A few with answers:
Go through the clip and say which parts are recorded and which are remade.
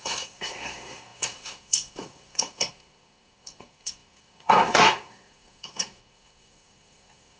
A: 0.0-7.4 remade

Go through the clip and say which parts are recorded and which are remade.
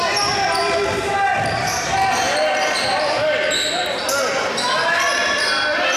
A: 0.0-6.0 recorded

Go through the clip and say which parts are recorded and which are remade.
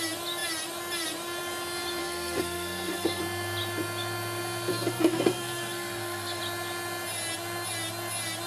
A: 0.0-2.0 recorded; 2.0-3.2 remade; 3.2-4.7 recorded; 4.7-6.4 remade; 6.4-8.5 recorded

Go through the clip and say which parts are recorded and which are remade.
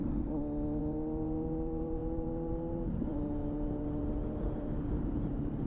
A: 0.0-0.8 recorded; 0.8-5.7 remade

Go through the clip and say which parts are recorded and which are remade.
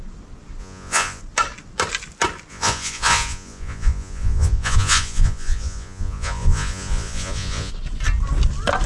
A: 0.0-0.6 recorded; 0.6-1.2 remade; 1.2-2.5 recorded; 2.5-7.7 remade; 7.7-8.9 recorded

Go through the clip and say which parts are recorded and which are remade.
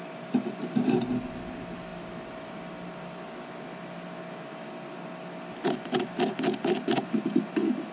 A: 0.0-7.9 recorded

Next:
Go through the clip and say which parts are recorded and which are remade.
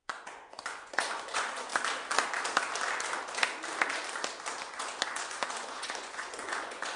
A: 0.0-1.7 remade; 1.7-4.6 recorded; 4.6-7.0 remade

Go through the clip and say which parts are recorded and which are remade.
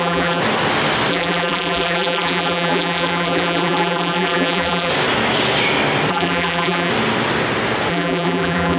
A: 0.0-0.4 remade; 0.4-1.1 recorded; 1.1-4.9 remade; 4.9-6.1 recorded; 6.1-6.9 remade; 6.9-7.9 recorded; 7.9-8.8 remade